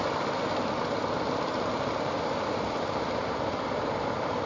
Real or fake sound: real